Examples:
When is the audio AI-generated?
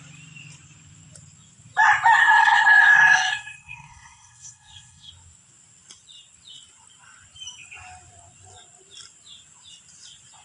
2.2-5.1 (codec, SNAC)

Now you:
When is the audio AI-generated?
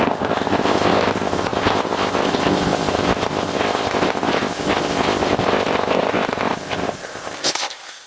0.0-8.1 (codec, ZipCodec)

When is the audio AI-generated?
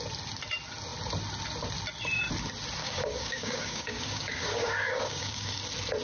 2.8-5.6 (codec, DAC)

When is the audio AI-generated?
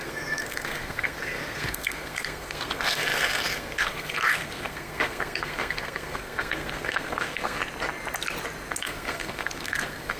0.0-7.6 (codec, SNAC); 8.8-10.2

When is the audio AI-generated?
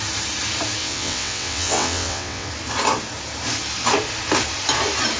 0.8-2.5 (vocoder, WaveNeXt)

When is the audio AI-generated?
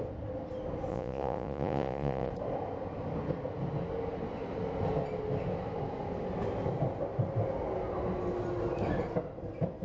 0.9-2.3 (vocoder, Vocos)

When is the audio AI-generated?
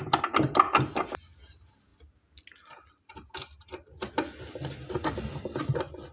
none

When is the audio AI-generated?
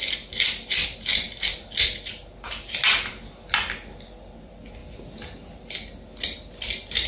none